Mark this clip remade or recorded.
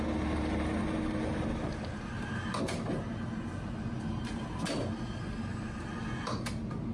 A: recorded